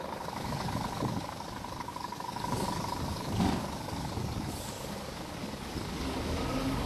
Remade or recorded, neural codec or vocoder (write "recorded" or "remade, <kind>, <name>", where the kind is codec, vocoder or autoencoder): remade, codec, DAC